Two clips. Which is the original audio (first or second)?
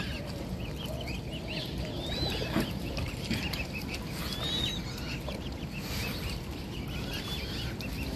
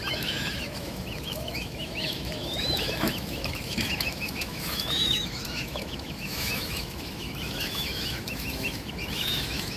first